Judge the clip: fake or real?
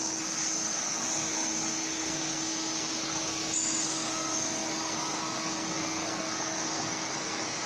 fake